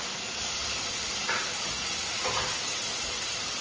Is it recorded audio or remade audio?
recorded